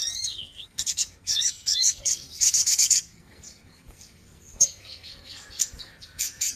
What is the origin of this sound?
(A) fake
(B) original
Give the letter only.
A